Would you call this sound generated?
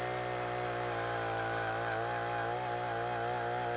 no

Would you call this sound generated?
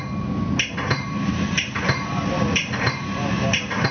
no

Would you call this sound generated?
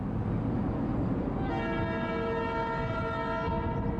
no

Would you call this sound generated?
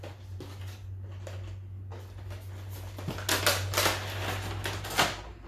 no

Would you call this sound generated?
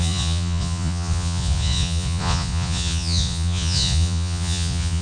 yes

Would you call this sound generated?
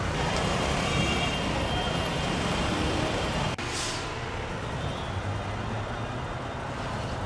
no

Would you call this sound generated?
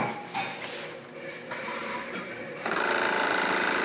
no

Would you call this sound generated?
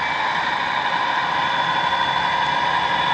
no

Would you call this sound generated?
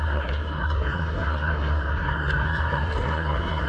yes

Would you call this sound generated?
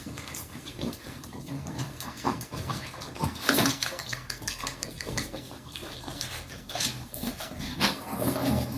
yes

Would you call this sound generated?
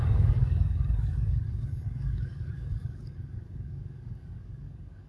yes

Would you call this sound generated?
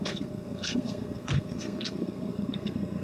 yes